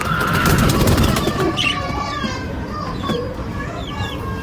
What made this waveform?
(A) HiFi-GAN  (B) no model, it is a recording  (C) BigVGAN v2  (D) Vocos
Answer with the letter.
C